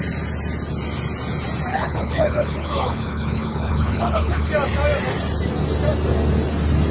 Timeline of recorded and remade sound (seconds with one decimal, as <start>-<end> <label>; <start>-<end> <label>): 0.0-1.7 recorded; 1.7-4.5 remade; 4.5-6.9 recorded